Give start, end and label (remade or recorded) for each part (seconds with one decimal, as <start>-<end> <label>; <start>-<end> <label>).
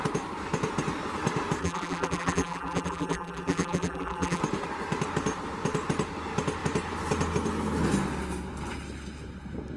0.0-1.6 recorded; 1.6-4.4 remade; 4.4-9.8 recorded